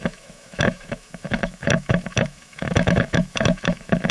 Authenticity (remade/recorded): remade